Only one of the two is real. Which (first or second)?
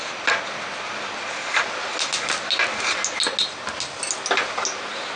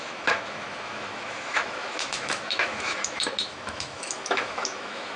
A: first